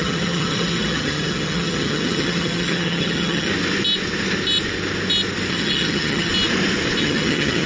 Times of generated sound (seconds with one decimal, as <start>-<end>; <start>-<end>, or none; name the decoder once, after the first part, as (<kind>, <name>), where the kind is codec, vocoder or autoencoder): 0.0-3.5 (vocoder, HiFi-GAN); 5.5-6.3; 7.0-7.7